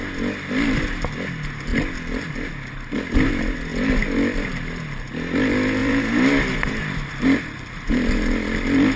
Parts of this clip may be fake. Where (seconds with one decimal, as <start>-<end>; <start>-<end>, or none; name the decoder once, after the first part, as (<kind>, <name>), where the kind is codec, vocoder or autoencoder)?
5.8-7.2 (vocoder, BigVGAN v2)